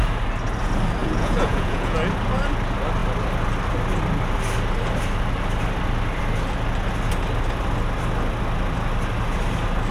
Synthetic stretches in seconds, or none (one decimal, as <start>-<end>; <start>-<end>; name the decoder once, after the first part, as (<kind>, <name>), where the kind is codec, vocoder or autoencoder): 1.0-2.0 (vocoder, Vocos)